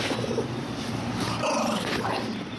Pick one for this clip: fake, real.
real